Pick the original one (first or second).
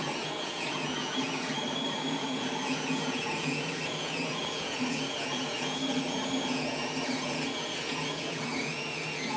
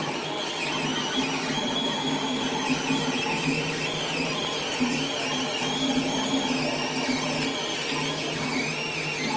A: second